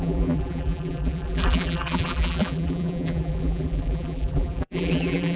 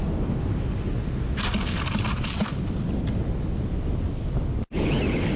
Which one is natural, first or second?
second